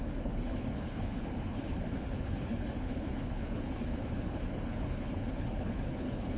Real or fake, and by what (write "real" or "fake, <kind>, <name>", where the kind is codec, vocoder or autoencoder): fake, codec, HILCodec